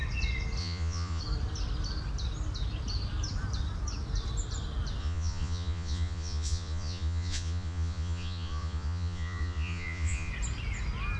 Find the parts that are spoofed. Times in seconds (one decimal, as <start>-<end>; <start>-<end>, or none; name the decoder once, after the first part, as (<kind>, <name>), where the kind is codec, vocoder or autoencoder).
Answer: 0.6-1.2 (vocoder, Vocos); 5.0-10.3